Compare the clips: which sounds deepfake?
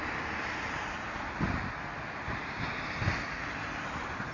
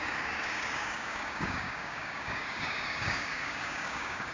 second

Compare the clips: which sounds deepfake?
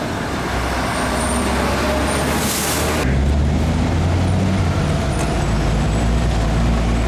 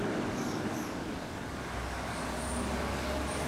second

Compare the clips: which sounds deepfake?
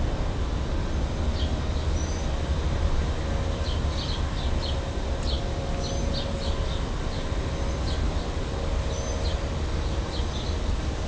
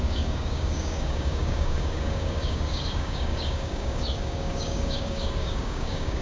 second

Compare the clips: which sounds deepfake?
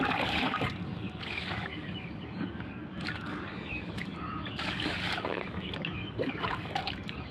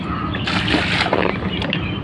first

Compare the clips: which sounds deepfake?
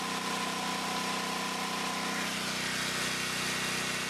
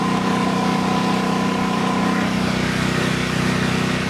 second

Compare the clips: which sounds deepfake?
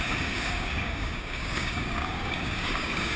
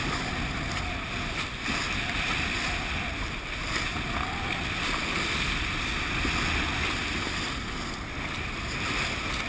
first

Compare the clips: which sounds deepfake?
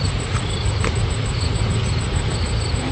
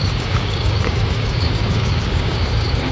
second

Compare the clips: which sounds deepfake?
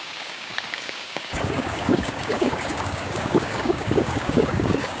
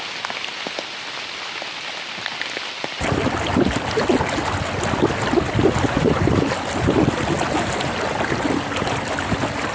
first